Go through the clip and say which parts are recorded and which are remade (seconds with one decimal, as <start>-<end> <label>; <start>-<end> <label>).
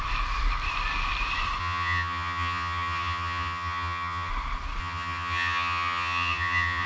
0.0-1.6 recorded; 1.6-4.3 remade; 4.3-4.8 recorded; 4.8-6.9 remade